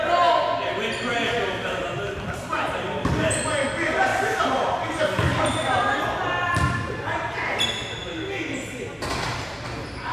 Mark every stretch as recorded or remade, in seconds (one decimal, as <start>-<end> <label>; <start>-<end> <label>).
0.0-4.1 recorded; 4.1-5.0 remade; 5.0-10.1 recorded